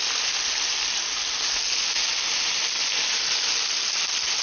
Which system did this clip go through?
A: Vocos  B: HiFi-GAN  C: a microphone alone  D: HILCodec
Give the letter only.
C